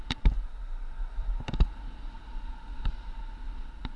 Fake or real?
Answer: real